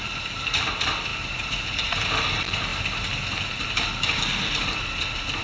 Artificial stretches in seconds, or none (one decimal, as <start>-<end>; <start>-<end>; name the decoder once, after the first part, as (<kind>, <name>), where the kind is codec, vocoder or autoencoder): none